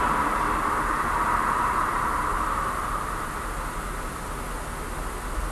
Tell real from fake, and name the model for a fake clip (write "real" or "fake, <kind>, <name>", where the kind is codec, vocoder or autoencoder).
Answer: real